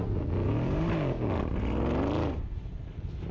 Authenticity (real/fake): real